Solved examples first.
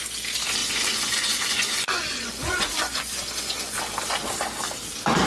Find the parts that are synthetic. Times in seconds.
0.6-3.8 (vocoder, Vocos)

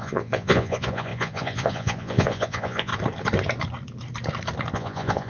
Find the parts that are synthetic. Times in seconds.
0.0-2.9 (vocoder, Vocos); 4.7-5.3